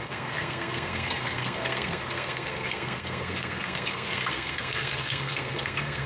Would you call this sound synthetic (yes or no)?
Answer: yes